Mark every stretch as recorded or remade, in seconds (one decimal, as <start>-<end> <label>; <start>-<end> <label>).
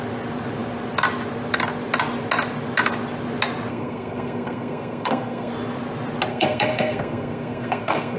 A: 0.0-3.7 recorded; 3.7-5.5 remade; 5.5-6.3 recorded; 6.3-8.2 remade